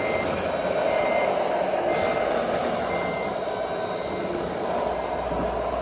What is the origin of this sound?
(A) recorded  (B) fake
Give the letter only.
A